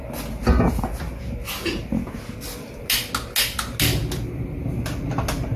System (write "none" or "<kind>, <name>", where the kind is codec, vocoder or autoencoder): none